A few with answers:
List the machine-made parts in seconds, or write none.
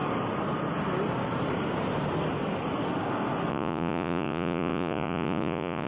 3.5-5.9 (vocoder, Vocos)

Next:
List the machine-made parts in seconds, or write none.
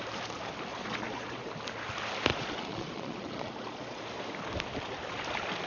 0.7-1.5 (vocoder, Vocos); 2.3-4.0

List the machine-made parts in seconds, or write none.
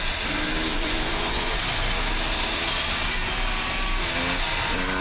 0.7-1.6 (vocoder, Vocos)